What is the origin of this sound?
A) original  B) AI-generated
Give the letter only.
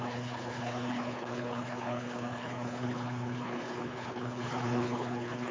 B